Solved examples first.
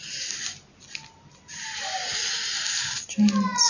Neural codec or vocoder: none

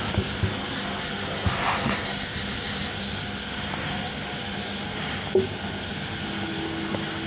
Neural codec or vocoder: none